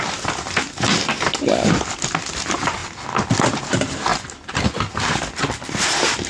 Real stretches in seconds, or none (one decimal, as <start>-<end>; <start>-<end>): 0.0-6.3